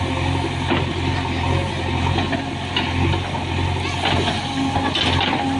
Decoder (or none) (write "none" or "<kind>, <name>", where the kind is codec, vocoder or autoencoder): none